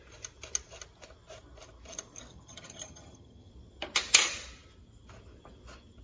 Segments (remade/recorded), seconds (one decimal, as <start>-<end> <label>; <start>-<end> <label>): 0.0-2.3 recorded; 2.3-3.5 remade; 3.5-6.0 recorded